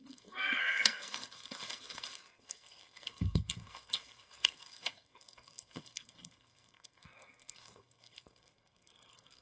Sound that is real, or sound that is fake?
fake